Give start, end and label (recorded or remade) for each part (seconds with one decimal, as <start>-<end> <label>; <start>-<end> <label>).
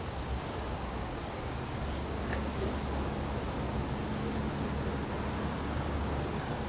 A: 0.0-2.5 remade; 2.5-5.6 recorded; 5.6-6.7 remade